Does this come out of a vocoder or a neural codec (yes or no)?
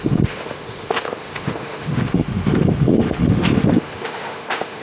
yes